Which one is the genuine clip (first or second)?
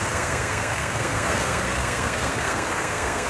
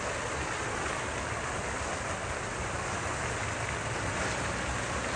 second